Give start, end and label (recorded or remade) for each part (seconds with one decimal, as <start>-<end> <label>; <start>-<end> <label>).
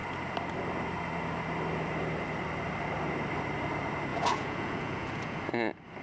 0.0-4.1 recorded; 4.1-5.5 remade; 5.5-6.0 recorded